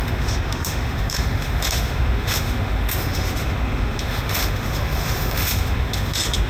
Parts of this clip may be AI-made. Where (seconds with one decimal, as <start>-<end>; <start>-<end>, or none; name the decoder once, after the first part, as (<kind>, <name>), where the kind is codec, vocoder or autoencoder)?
0.0-6.5 (autoencoder, DAC-VAE)